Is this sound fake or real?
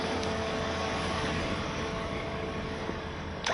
fake